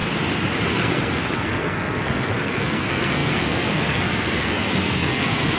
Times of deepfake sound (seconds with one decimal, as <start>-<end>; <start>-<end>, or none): 0.7-5.6